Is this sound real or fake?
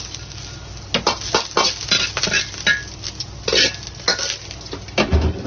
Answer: real